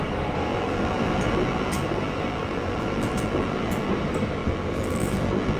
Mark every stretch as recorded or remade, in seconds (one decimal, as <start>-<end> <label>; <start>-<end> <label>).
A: 0.0-0.5 recorded; 0.5-3.9 remade; 3.9-4.4 recorded; 4.4-5.6 remade